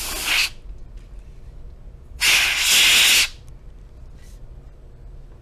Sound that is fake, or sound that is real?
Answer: real